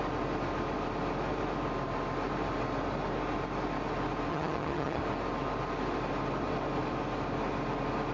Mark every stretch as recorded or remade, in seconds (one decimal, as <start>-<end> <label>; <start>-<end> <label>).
0.0-4.3 recorded; 4.3-5.0 remade; 5.0-8.1 recorded